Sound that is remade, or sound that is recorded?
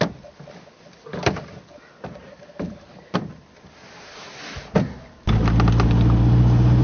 recorded